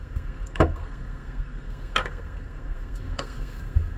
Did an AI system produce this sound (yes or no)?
yes